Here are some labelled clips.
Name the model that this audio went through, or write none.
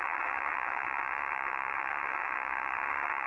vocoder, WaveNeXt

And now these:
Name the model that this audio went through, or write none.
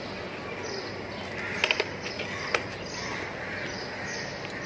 none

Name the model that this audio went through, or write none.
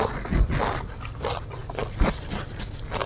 none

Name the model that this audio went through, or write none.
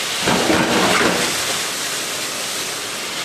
none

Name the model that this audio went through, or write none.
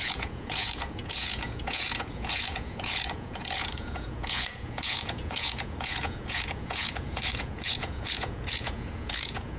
vocoder, Vocos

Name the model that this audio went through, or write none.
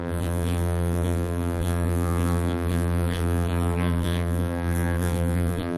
vocoder, BigVGAN v2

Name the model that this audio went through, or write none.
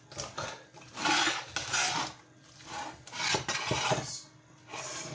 none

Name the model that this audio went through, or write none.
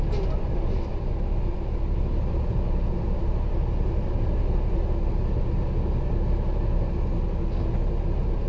none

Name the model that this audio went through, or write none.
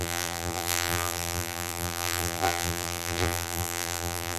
vocoder, BigVGAN v2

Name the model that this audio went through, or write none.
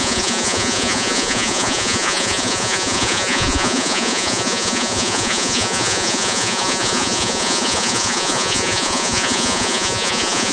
vocoder, Vocos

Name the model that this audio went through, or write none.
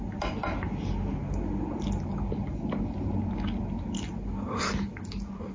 none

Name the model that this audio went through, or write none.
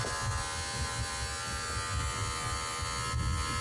none